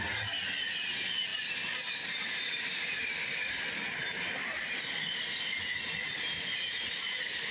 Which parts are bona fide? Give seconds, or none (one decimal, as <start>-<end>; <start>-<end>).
0.0-7.5